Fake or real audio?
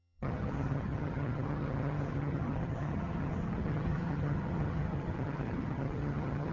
fake